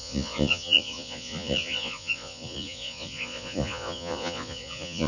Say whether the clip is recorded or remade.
remade